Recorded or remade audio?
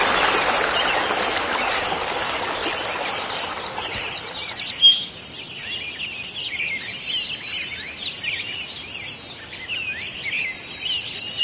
recorded